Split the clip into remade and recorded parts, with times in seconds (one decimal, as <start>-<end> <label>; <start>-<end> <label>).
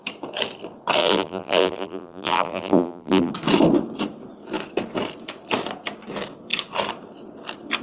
0.0-1.0 recorded; 1.0-3.3 remade; 3.3-7.8 recorded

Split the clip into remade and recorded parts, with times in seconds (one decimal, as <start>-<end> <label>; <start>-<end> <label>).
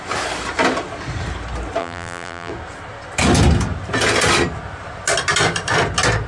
0.0-1.8 recorded; 1.8-2.5 remade; 2.5-6.3 recorded